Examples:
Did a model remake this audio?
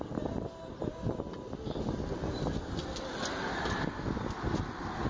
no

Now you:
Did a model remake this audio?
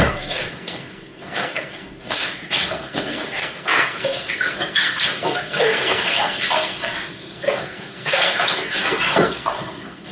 yes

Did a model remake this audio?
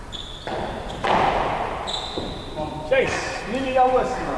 yes